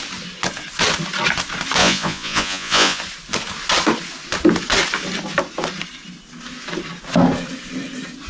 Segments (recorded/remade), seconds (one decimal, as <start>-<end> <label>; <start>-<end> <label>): 0.0-1.8 recorded; 1.8-3.0 remade; 3.0-8.3 recorded